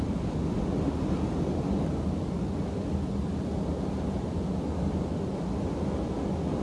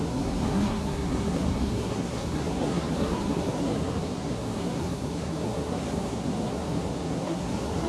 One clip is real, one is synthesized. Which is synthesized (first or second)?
second